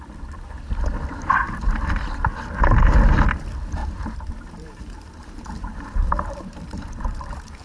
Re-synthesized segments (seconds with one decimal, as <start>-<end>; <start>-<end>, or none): 3.8-7.6